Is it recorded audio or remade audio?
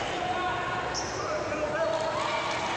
recorded